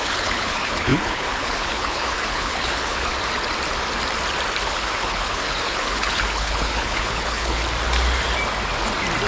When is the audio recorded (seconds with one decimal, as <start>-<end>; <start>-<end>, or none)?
3.1-4.7; 7.6-9.3